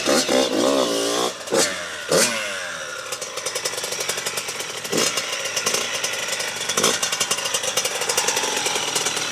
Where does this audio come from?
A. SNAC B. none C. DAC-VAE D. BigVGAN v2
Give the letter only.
B